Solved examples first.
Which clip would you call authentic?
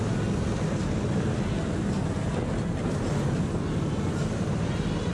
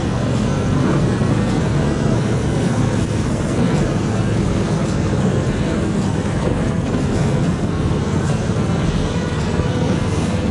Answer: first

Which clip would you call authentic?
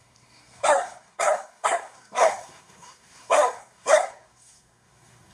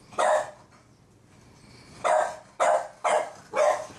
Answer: second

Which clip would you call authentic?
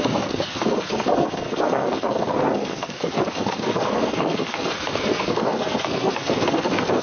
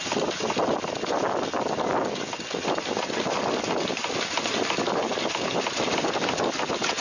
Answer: second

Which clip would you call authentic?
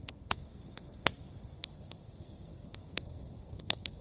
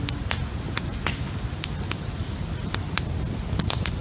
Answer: second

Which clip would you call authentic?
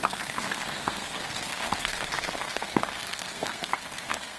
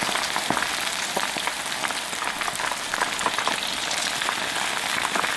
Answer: second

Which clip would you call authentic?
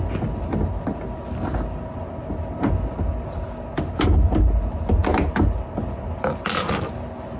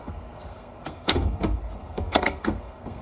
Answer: first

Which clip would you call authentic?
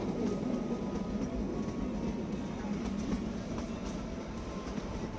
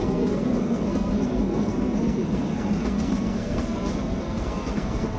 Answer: first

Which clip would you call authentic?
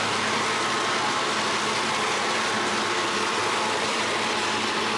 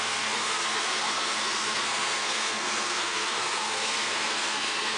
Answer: first